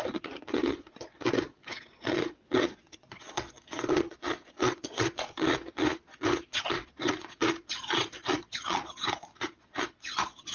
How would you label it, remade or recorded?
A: remade